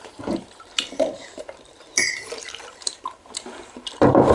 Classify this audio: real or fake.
fake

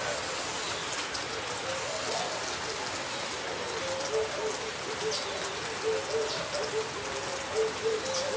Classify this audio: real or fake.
real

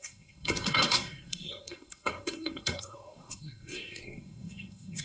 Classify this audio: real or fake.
fake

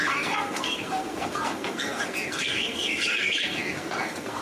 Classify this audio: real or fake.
fake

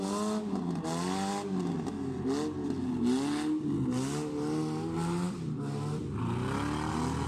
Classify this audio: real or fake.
real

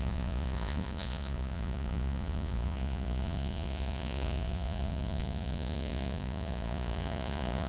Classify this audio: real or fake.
fake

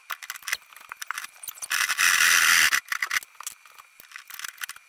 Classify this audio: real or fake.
real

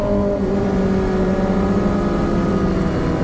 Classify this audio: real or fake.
real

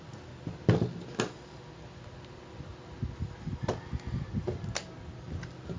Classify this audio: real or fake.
real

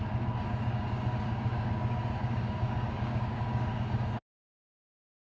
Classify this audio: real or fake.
fake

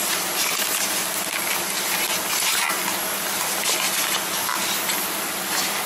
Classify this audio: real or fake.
real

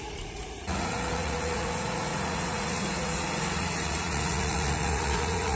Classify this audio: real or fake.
fake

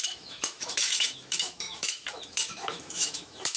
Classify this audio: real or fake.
fake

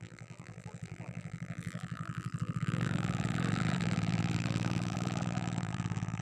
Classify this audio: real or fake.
fake